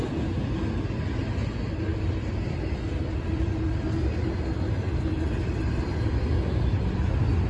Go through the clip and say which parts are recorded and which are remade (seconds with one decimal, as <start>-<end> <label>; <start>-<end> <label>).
0.0-1.9 recorded; 1.9-6.1 remade; 6.1-7.5 recorded